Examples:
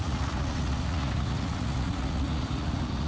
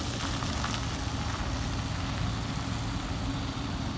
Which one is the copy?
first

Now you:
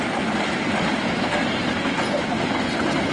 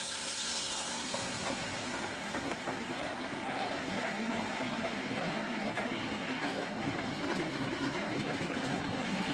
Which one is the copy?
second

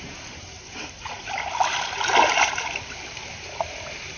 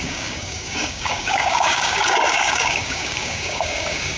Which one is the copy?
second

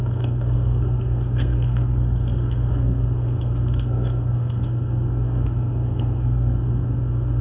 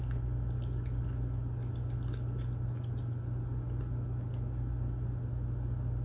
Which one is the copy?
first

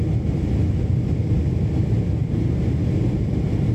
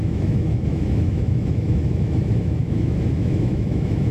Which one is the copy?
second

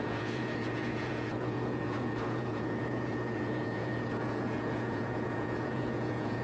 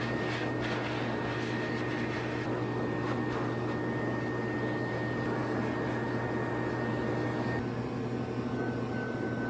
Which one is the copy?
first